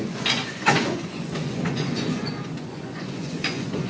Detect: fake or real fake